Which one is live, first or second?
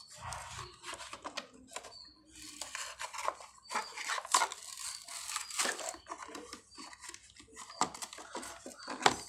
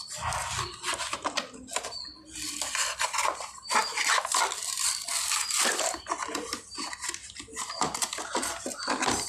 first